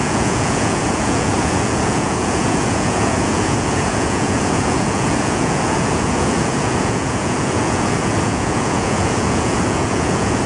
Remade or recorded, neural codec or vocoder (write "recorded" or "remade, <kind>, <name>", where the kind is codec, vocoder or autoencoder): remade, vocoder, Vocos